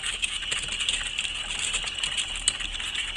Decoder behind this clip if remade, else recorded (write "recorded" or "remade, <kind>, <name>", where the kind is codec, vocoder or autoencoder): recorded